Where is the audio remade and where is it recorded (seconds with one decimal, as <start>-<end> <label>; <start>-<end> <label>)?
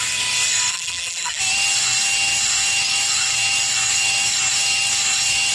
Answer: 0.0-0.7 recorded; 0.7-1.4 remade; 1.4-5.5 recorded